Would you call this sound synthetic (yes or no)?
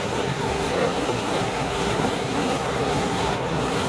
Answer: yes